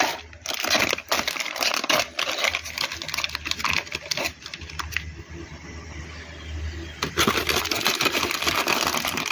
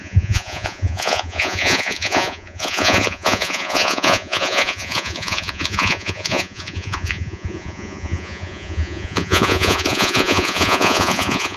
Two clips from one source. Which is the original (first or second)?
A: first